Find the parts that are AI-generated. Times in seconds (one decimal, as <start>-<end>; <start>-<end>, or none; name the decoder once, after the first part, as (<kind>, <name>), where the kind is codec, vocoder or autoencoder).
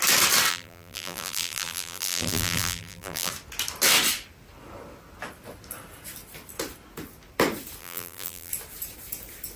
0.5-3.3 (vocoder, BigVGAN v2); 7.8-8.5